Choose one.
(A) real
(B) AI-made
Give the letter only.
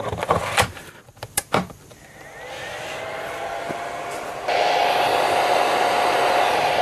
B